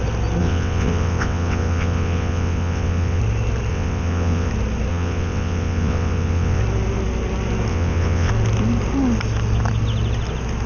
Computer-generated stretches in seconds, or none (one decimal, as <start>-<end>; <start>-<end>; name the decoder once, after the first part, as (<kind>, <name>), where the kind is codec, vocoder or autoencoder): 0.4-3.2 (vocoder, WaveNeXt); 3.7-4.5; 4.9-6.6; 7.7-8.3